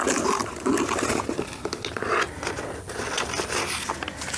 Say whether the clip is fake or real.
real